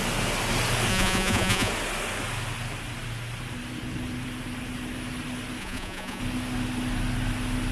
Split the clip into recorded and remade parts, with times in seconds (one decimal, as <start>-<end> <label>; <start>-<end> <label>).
0.0-0.9 recorded; 0.9-1.7 remade; 1.7-5.6 recorded; 5.6-6.2 remade; 6.2-7.7 recorded